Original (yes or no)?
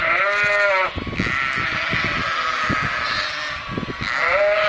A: yes